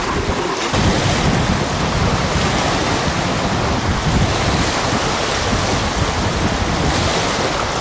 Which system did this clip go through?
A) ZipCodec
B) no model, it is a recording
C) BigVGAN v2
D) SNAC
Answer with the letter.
B